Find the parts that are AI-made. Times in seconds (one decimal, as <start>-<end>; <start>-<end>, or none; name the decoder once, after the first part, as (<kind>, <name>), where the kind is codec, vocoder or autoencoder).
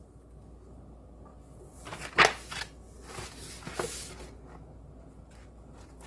none